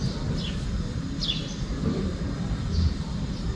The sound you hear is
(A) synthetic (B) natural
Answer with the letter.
B